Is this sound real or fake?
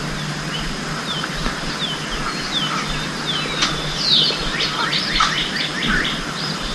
real